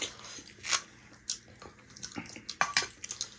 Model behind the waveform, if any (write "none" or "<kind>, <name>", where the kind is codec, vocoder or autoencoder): none